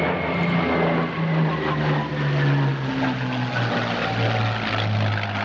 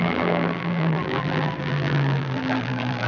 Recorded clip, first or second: first